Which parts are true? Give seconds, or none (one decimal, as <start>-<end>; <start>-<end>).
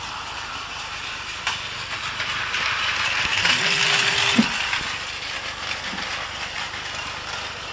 0.0-7.7